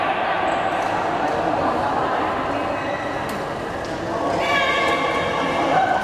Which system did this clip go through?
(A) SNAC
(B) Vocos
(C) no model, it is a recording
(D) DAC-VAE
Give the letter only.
C